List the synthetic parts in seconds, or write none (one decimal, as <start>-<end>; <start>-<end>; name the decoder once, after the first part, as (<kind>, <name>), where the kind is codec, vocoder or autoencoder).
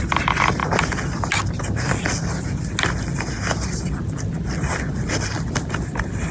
none